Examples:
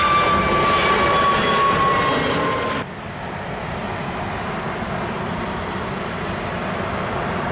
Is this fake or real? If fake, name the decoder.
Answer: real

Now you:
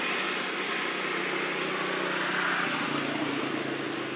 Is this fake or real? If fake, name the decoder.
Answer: real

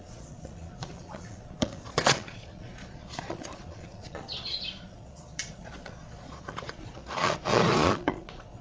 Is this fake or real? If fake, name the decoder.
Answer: fake, vocoder, Vocos